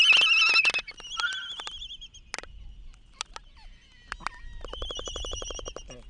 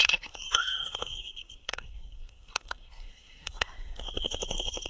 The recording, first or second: first